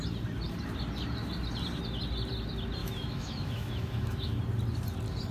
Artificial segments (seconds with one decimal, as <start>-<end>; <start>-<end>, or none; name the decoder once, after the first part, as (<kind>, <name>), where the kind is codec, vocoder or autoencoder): 2.8-4.4 (autoencoder, DAC-VAE)